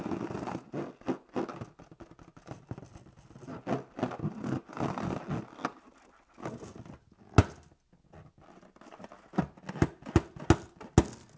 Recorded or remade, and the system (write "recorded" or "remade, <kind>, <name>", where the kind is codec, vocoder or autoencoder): recorded